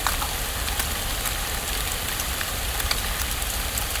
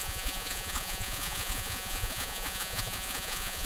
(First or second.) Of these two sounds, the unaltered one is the first